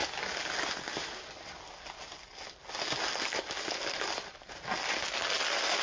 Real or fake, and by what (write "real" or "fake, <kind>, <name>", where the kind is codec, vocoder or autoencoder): real